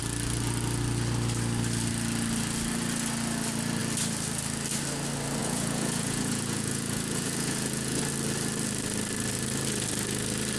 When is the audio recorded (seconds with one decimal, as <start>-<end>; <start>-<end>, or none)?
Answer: 0.0-5.4; 8.0-10.6